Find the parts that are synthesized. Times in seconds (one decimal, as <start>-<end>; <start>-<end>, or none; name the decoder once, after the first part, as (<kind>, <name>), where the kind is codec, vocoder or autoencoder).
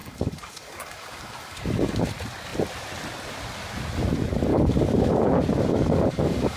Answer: 0.0-2.0 (codec, DAC); 4.5-5.3; 5.7-6.6